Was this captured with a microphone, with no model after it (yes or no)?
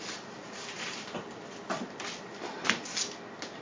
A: yes